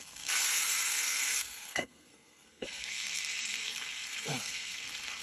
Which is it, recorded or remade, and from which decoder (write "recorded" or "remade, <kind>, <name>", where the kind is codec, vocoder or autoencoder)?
remade, codec, SNAC